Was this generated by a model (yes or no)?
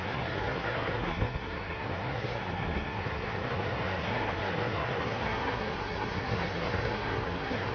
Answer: yes